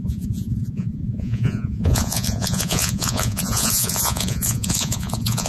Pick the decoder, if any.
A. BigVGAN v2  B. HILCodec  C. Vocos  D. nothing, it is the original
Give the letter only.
C